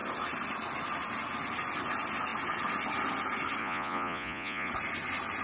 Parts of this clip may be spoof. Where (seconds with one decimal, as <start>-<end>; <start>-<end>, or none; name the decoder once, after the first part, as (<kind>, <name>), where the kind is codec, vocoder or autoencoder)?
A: 3.6-4.7 (vocoder, Vocos)